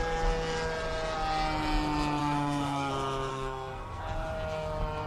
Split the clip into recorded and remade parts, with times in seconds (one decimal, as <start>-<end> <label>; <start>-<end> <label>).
0.0-2.2 recorded; 2.2-2.9 remade; 2.9-3.3 recorded; 3.3-4.0 remade; 4.0-5.1 recorded